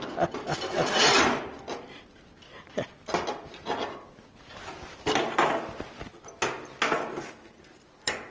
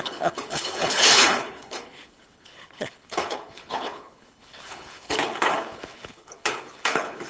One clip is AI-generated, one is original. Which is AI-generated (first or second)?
second